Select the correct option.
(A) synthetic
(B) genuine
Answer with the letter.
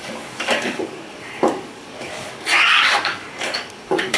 A